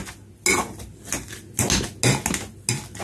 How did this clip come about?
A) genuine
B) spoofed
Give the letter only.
A